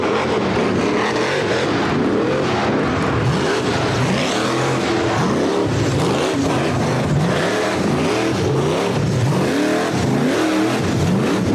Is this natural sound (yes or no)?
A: yes